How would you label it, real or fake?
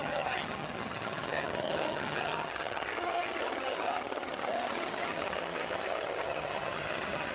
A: fake